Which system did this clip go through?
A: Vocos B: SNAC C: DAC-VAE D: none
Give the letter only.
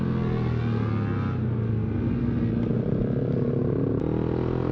D